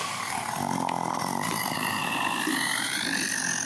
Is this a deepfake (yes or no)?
no